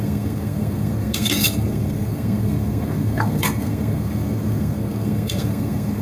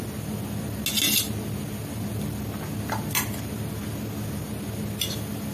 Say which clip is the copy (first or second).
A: first